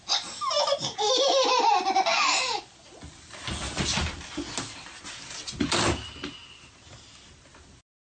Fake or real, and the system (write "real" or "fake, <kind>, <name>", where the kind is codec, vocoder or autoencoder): real